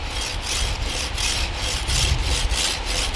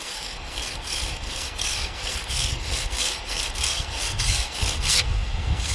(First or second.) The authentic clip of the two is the first